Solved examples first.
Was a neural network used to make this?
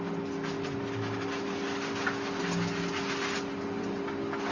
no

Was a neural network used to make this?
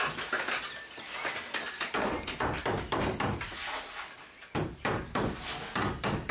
no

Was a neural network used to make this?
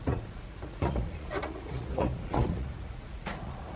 yes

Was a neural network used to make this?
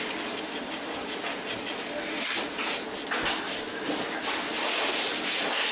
no